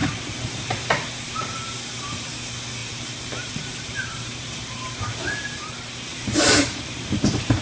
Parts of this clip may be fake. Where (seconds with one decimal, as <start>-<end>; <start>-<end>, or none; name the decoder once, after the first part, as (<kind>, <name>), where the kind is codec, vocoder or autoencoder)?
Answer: 0.0-0.9 (vocoder, BigVGAN v2); 2.8-4.8; 6.1-7.6